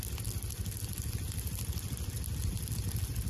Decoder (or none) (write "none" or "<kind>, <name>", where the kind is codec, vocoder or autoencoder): none